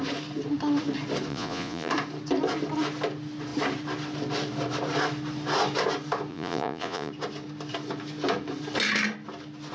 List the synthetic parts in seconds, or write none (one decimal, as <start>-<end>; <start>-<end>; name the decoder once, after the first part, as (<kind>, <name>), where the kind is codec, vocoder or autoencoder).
1.3-1.9 (vocoder, Vocos); 6.3-7.1